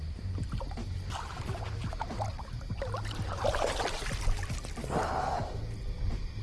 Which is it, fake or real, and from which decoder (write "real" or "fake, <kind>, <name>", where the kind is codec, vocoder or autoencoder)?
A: real